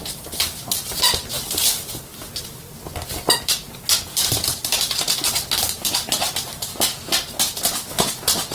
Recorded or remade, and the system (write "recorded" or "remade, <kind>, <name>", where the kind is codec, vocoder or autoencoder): recorded